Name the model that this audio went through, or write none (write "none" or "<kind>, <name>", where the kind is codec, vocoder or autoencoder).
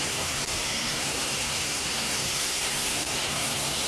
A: codec, SNAC